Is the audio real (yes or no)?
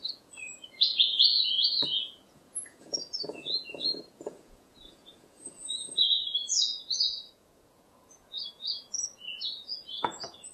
no